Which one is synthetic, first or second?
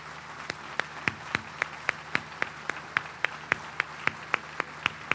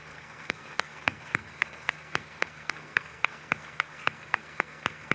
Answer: second